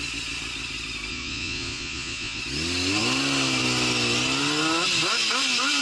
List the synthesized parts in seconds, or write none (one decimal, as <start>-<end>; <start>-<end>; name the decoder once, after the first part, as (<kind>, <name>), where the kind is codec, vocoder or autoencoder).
1.1-2.4 (vocoder, Vocos)